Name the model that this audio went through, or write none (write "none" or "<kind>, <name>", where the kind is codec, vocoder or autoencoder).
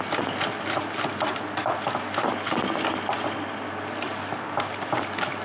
none